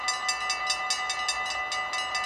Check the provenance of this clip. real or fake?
real